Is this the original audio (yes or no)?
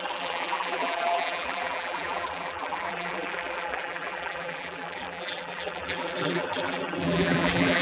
no